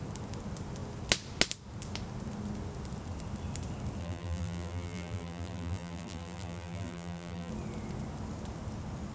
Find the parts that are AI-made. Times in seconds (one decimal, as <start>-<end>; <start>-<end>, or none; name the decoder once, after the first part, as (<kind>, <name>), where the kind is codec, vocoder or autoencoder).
4.0-7.5 (vocoder, BigVGAN v2)